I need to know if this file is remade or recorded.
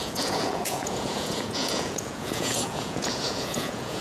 remade